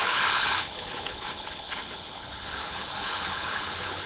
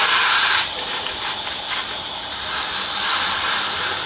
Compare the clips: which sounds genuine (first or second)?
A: second